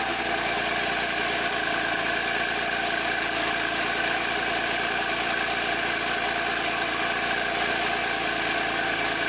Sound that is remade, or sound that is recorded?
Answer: recorded